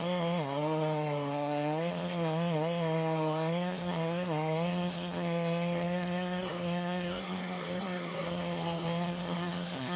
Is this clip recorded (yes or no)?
no